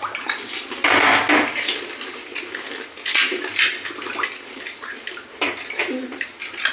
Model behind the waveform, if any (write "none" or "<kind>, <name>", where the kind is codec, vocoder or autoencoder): none